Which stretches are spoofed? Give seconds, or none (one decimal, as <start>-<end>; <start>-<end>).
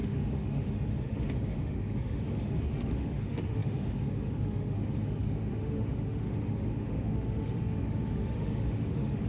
0.0-9.3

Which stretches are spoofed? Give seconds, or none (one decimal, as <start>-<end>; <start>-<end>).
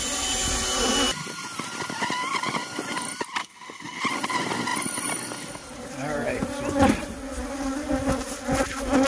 3.4-4.0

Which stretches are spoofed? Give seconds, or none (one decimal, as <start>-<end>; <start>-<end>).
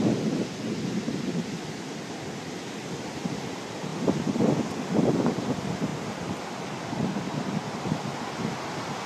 none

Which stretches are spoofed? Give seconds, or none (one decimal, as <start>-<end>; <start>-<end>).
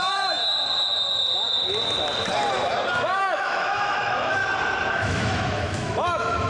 0.0-0.4; 3.2-4.4; 4.9-6.5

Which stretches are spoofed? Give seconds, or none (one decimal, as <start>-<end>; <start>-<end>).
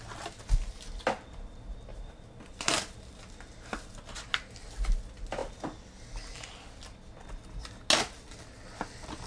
none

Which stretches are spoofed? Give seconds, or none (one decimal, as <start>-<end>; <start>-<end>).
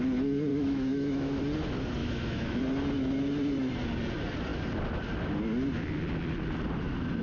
0.5-1.4; 2.0-2.6